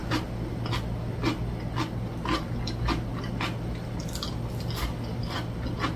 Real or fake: real